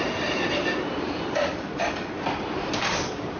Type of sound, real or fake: fake